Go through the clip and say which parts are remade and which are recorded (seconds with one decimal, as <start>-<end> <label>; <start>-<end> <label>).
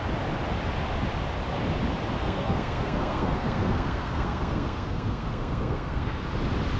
0.0-2.2 recorded; 2.2-6.2 remade; 6.2-6.8 recorded